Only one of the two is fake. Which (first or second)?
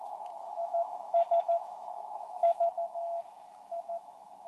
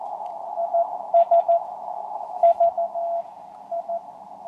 first